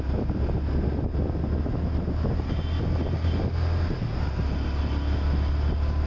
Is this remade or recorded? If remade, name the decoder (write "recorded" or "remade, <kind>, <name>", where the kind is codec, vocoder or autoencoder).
recorded